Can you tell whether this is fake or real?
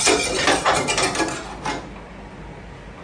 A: real